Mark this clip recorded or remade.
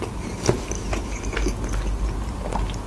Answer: recorded